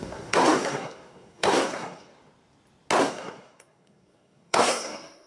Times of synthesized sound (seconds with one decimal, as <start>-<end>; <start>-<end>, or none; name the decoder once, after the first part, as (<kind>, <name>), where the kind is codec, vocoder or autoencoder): 0.0-2.1 (codec, SNAC); 3.0-5.3